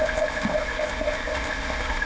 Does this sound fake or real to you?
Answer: fake